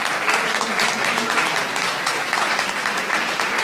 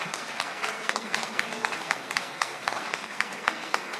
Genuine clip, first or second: first